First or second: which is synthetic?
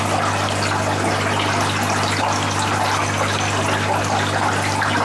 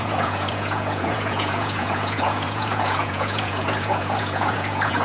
second